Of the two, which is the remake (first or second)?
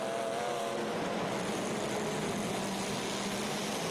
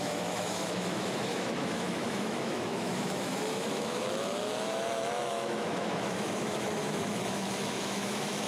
second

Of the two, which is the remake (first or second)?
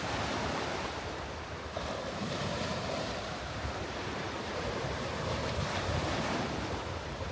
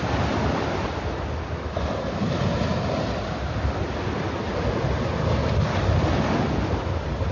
first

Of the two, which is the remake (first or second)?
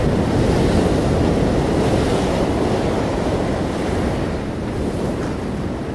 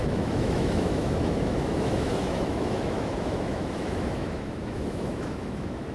second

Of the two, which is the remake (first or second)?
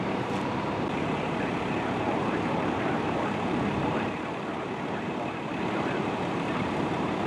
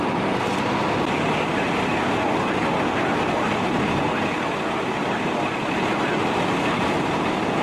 first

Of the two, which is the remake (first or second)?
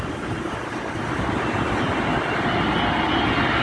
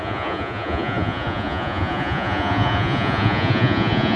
second